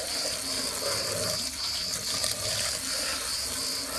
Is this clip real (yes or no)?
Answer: yes